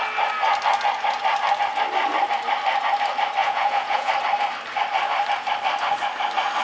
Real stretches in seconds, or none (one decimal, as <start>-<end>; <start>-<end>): 0.0-3.4; 4.1-6.6